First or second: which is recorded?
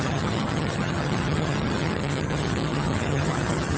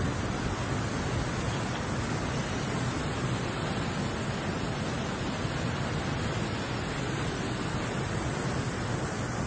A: second